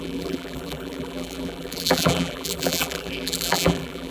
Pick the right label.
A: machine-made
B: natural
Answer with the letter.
A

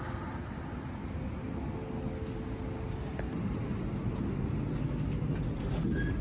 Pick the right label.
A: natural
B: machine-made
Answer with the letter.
A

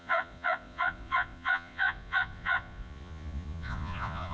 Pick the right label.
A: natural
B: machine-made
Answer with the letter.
B